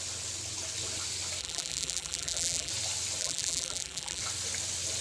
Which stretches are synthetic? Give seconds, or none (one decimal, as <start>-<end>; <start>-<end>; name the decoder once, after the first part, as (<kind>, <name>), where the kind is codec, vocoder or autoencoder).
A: 1.4-2.7 (vocoder, BigVGAN v2); 3.2-4.2